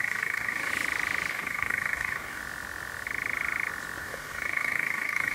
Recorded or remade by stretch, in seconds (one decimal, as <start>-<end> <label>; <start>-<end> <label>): 0.0-0.7 remade; 0.7-1.3 recorded; 1.3-2.4 remade; 2.4-4.0 recorded; 4.0-5.3 remade